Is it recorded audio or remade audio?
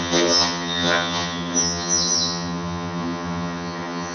remade